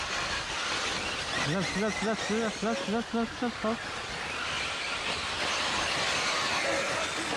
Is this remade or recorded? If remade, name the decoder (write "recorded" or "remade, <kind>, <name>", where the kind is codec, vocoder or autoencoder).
recorded